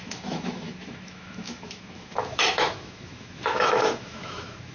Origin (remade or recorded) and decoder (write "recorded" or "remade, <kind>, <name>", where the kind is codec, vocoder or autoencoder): remade, autoencoder, DAC-VAE